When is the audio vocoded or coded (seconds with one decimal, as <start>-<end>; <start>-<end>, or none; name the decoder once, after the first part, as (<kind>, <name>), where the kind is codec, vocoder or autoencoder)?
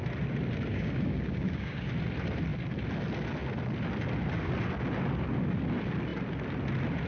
0.7-1.9 (codec, DAC)